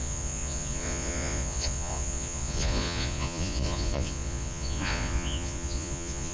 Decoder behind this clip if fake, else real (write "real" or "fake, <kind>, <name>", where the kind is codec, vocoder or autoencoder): fake, vocoder, Vocos